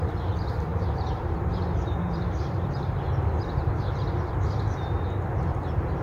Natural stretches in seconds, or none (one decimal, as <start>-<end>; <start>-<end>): 0.0-0.7; 4.3-6.0